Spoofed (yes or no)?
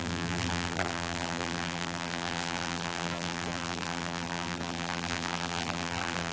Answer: yes